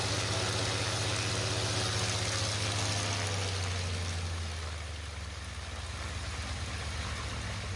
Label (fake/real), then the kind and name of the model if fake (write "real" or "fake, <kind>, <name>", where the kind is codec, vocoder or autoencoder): real